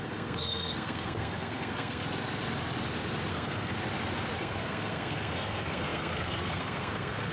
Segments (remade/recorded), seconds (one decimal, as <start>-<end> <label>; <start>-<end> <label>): 0.0-2.0 remade; 2.0-3.3 recorded; 3.3-3.7 remade; 3.7-4.4 recorded; 4.4-7.3 remade